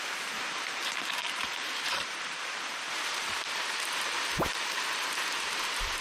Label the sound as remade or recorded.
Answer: remade